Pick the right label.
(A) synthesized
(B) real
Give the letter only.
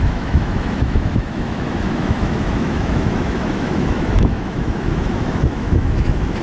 A